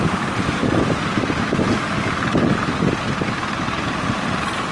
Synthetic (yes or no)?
no